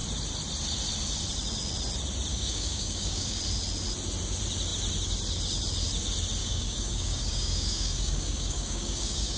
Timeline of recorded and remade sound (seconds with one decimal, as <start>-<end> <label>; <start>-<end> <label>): 0.0-2.3 recorded; 2.3-3.4 remade; 3.4-6.4 recorded; 6.4-9.4 remade